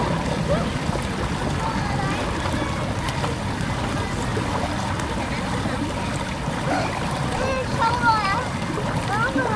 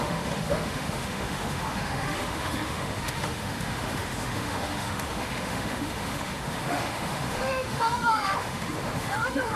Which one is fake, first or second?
second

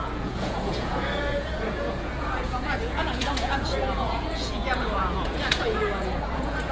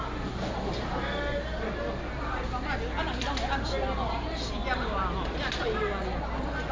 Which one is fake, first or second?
first